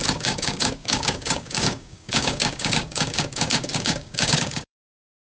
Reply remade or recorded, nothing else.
remade